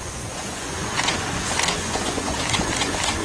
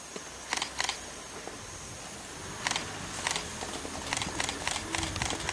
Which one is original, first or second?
second